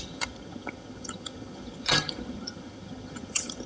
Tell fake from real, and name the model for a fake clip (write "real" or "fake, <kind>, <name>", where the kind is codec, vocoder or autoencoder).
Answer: fake, vocoder, HiFi-GAN